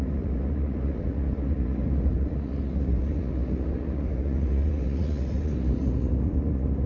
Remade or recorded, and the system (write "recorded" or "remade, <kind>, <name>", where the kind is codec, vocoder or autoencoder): remade, vocoder, Vocos